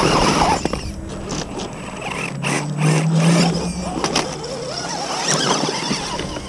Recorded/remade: recorded